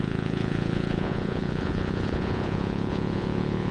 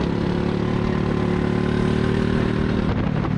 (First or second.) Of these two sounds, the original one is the second